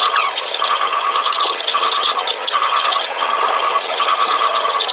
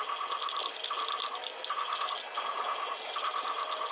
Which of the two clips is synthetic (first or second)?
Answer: first